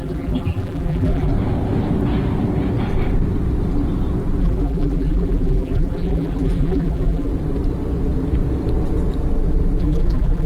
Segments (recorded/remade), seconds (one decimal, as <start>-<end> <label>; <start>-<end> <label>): 0.0-1.3 remade; 1.3-4.4 recorded; 4.4-7.3 remade; 7.3-9.8 recorded; 9.8-10.5 remade